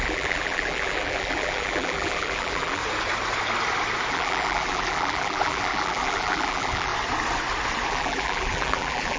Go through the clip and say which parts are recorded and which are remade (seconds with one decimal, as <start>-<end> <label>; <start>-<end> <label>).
0.0-2.8 remade; 2.8-4.1 recorded; 4.1-6.9 remade; 6.9-7.9 recorded; 7.9-9.2 remade